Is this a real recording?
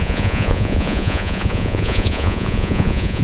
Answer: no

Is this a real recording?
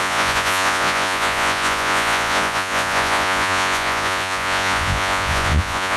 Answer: no